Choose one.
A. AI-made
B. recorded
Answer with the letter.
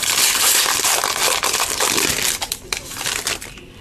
A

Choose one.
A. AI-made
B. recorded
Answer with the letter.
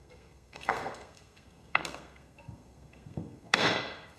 A